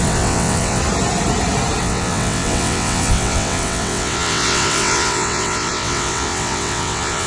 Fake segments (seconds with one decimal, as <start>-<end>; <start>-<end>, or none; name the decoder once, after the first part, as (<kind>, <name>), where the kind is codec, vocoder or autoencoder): 0.0-0.8 (vocoder, WaveNeXt); 1.8-7.3